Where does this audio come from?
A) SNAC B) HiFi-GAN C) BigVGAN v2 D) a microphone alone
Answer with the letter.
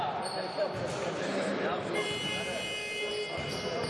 C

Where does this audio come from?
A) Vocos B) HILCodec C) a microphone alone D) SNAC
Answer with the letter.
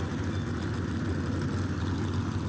C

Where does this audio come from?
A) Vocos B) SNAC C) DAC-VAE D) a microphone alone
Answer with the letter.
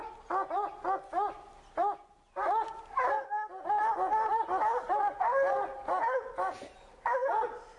D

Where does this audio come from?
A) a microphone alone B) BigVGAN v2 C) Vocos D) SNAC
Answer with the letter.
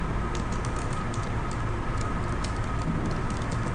A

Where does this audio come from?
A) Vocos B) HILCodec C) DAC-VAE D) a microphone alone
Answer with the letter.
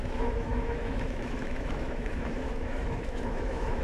C